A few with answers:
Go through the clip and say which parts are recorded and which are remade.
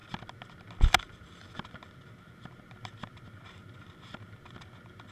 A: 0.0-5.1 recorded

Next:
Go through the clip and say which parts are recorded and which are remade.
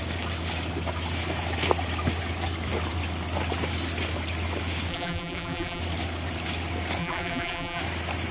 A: 0.0-4.9 recorded; 4.9-5.8 remade; 5.8-7.0 recorded; 7.0-7.8 remade; 7.8-8.3 recorded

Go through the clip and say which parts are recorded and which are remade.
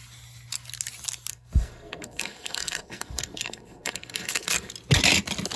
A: 0.0-1.3 recorded; 1.3-4.7 remade; 4.7-5.6 recorded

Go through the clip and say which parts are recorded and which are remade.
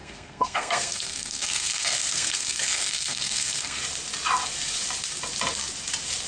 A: 0.0-3.8 remade; 3.8-6.3 recorded